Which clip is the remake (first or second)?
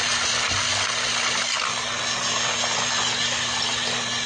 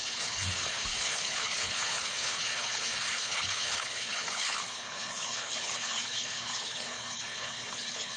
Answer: second